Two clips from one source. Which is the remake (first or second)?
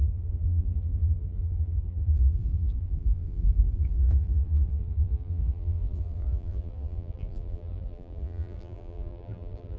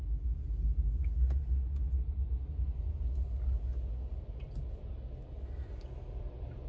first